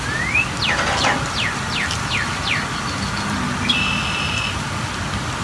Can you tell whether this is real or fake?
real